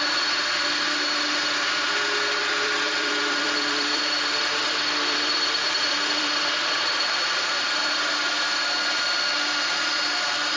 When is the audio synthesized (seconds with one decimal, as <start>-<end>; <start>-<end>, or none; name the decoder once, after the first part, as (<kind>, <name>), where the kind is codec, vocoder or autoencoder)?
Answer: 2.4-7.5 (vocoder, BigVGAN v2)